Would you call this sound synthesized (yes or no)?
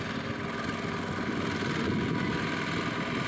no